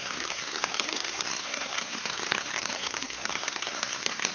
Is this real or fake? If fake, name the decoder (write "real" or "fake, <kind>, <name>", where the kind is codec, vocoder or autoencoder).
fake, codec, SNAC